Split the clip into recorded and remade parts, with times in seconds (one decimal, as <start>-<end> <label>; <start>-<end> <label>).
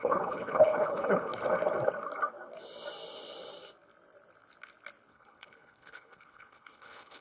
0.0-1.3 remade; 1.3-5.1 recorded; 5.1-7.2 remade